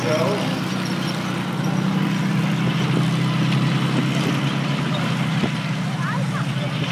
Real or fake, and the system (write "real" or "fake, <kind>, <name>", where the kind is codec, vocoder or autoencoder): real